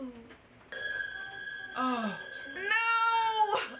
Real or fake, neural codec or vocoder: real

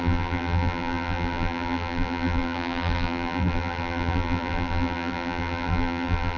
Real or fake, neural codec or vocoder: fake, vocoder, BigVGAN v2